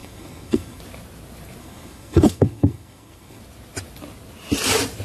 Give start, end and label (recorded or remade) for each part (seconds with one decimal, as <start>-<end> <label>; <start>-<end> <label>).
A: 0.0-0.8 remade; 0.8-1.6 recorded; 1.6-3.4 remade; 3.4-5.0 recorded